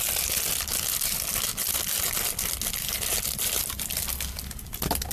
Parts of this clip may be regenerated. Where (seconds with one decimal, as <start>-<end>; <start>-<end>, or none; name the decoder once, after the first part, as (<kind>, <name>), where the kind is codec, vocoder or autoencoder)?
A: none